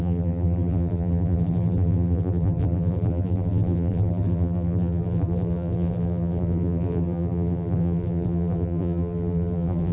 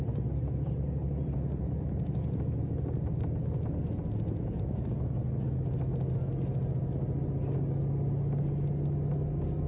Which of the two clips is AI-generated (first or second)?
first